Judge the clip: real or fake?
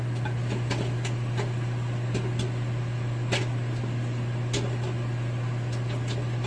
real